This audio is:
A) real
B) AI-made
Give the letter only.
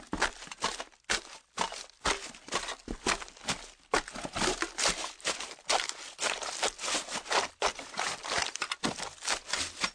A